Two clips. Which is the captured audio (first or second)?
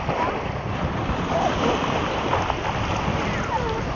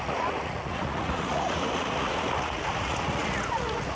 first